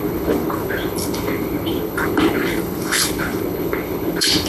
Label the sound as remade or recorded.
remade